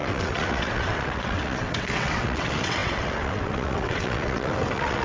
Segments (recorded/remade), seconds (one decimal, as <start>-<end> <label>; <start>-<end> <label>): 0.0-5.0 remade